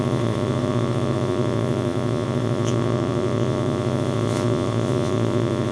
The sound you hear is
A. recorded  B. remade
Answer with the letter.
B